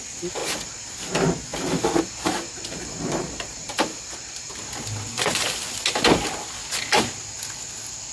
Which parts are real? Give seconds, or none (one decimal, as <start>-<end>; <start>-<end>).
0.0-0.4; 1.0-1.5; 4.5-8.1